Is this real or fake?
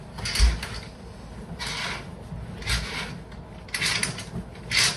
real